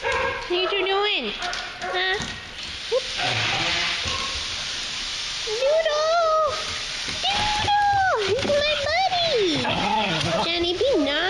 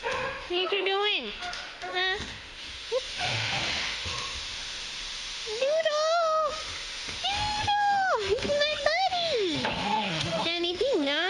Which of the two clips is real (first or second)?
first